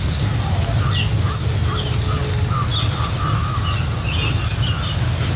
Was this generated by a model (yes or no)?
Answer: no